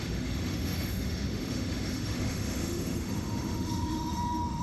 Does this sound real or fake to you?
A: fake